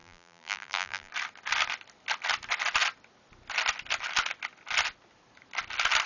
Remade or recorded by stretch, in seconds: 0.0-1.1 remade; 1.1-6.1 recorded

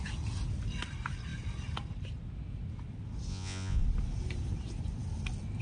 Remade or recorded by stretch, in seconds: 0.0-3.3 recorded; 3.3-3.8 remade; 3.8-5.6 recorded

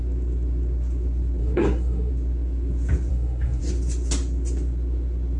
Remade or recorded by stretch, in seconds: 0.0-1.4 recorded; 1.4-2.1 remade; 2.1-3.1 recorded; 3.1-3.6 remade; 3.6-5.4 recorded